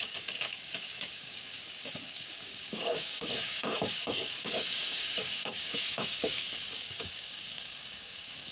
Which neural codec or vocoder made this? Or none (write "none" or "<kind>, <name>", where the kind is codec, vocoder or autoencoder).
codec, DAC